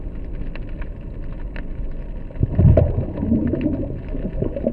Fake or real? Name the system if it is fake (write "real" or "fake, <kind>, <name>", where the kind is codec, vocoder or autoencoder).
real